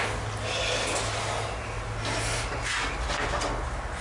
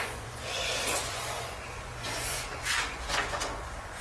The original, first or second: first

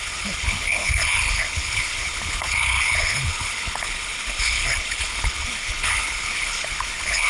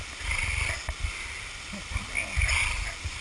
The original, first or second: second